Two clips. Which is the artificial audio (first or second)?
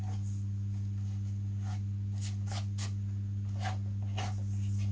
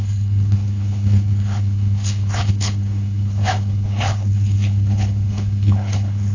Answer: second